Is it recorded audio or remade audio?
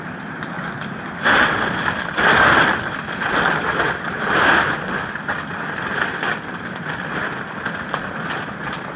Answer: recorded